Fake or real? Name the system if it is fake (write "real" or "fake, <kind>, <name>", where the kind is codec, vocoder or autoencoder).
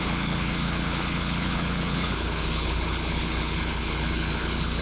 fake, codec, HILCodec